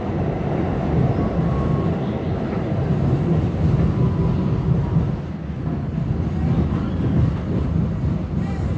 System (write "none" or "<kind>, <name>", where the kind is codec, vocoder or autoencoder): none